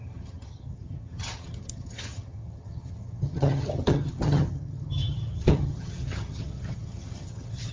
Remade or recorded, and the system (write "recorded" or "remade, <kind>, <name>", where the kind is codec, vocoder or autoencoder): remade, vocoder, HiFi-GAN